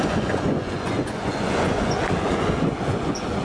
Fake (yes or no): yes